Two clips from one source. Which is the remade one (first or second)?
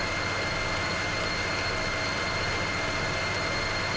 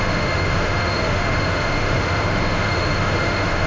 second